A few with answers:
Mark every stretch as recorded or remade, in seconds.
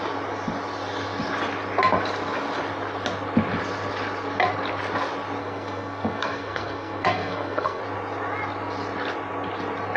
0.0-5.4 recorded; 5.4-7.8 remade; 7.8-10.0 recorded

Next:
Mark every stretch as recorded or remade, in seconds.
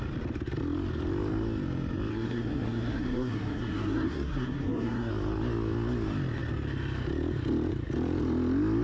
0.0-2.1 recorded; 2.1-5.1 remade; 5.1-8.8 recorded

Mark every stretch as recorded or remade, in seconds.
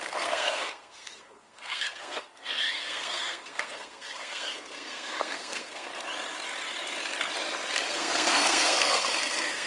0.0-5.9 remade; 5.9-7.9 recorded; 7.9-9.7 remade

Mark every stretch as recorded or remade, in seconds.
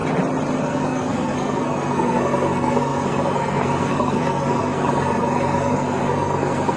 0.0-0.6 recorded; 0.6-6.8 remade